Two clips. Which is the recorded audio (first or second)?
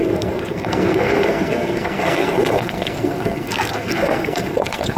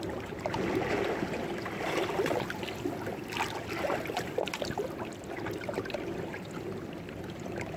second